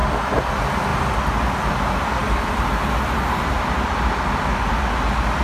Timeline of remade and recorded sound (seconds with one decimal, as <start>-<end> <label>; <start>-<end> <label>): 0.0-5.4 recorded